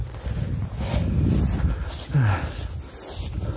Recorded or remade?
recorded